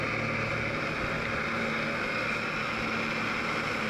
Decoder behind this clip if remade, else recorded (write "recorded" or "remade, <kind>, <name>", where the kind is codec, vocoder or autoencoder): recorded